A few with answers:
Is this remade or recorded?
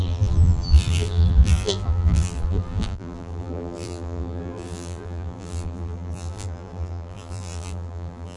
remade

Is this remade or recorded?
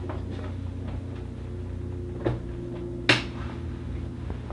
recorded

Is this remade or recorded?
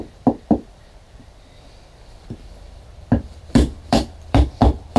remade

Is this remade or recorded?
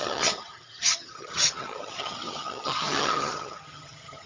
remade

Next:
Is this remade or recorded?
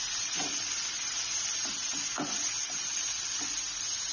recorded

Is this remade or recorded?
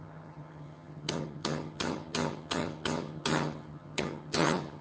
remade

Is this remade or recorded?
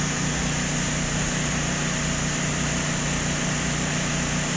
recorded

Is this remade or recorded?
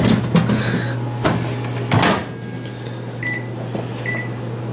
recorded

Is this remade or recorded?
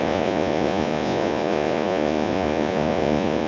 remade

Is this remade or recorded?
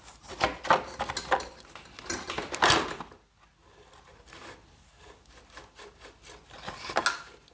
recorded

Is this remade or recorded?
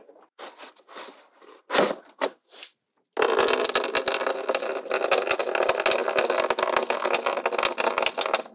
recorded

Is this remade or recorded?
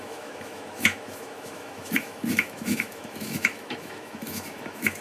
remade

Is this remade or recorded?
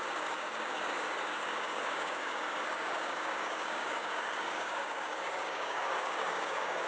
remade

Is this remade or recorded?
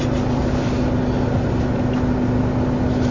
recorded